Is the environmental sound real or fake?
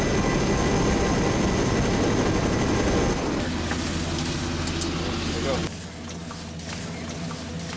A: real